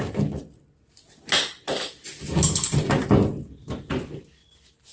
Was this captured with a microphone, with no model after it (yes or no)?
yes